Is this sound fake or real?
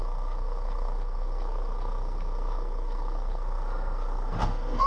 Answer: fake